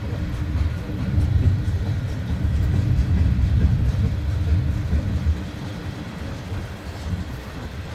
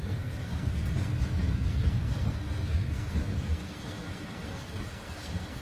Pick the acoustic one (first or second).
first